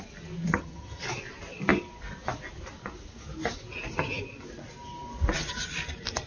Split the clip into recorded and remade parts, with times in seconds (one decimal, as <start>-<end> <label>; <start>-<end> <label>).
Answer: 0.0-0.5 recorded; 0.5-1.0 remade; 1.0-6.3 recorded